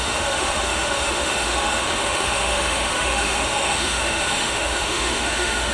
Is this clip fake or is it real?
fake